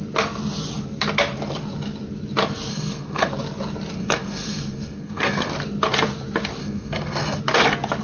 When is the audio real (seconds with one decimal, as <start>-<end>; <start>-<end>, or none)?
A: 0.0-2.7; 3.3-4.0; 5.5-6.6; 7.4-8.0